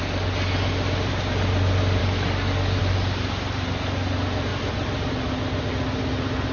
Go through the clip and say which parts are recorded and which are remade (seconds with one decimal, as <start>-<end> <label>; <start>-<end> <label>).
0.0-2.0 recorded; 2.0-2.8 remade; 2.8-6.5 recorded